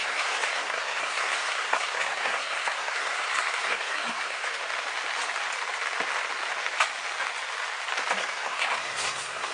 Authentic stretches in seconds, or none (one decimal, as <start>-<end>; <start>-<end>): 4.6-8.2